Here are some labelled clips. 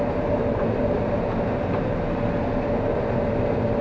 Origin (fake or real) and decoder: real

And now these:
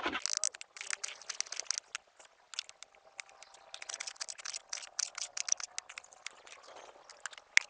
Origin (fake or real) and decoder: real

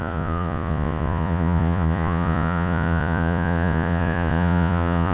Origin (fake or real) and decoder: fake, vocoder, Vocos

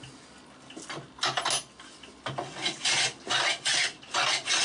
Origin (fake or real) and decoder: real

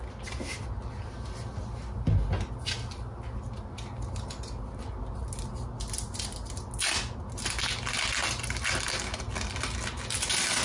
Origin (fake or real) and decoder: real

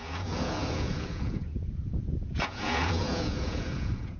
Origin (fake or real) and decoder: fake, vocoder, Vocos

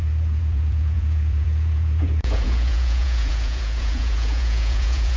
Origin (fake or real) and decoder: fake, vocoder, Vocos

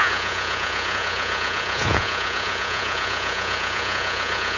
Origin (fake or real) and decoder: fake, vocoder, Vocos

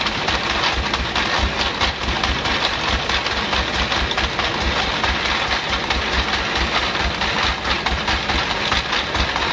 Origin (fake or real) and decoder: real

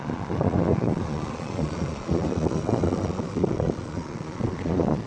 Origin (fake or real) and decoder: fake, vocoder, Vocos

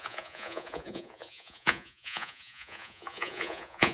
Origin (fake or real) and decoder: fake, vocoder, Vocos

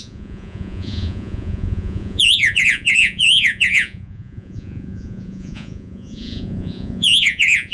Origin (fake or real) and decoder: fake, vocoder, Vocos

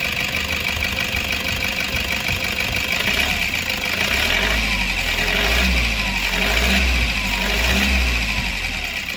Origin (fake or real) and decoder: real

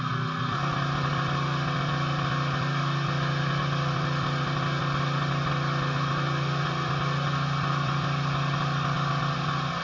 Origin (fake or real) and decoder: real